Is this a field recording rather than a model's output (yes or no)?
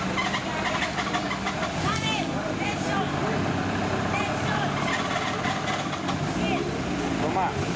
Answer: yes